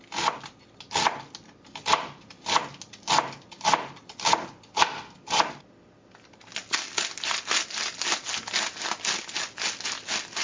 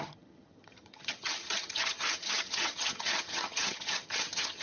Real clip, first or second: first